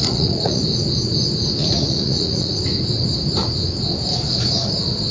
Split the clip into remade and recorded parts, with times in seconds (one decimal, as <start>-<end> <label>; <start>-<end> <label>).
0.0-0.6 remade; 0.6-1.6 recorded; 1.6-2.5 remade; 2.5-5.1 recorded